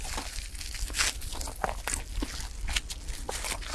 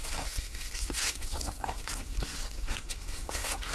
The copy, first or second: second